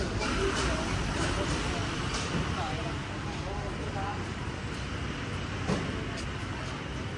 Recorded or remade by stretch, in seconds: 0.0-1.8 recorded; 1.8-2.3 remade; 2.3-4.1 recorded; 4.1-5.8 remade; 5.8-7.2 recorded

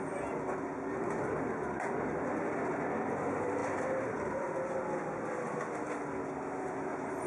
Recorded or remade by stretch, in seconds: 0.0-7.3 recorded

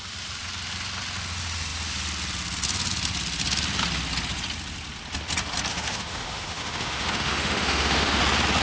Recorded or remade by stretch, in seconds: 0.0-5.7 recorded; 5.7-8.2 remade; 8.2-8.6 recorded

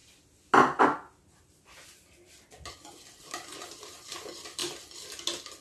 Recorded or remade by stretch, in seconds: 0.0-3.2 recorded; 3.2-4.6 remade; 4.6-5.6 recorded

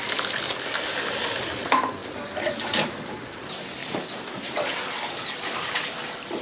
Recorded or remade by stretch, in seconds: 0.0-2.0 recorded; 2.0-3.1 remade; 3.1-6.4 recorded

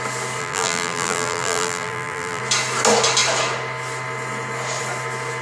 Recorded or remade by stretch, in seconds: 0.0-0.4 recorded; 0.4-2.4 remade; 2.4-5.4 recorded

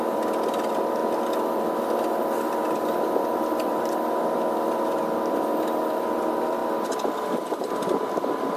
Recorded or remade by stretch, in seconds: 0.0-1.0 remade; 1.0-2.2 recorded; 2.2-2.6 remade; 2.6-3.3 recorded; 3.3-6.6 remade; 6.6-7.6 recorded; 7.6-8.6 remade